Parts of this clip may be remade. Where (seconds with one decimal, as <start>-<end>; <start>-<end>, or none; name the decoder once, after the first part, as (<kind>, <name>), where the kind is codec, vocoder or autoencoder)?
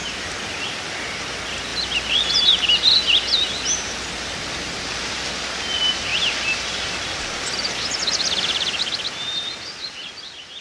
1.7-2.4 (vocoder, BigVGAN v2); 6.1-7.2